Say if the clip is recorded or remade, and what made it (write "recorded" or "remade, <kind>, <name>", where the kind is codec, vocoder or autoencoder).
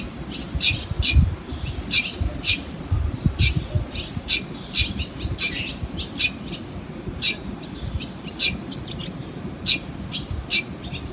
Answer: recorded